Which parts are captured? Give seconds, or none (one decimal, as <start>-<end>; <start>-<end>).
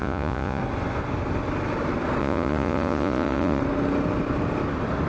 0.6-2.2; 3.6-5.1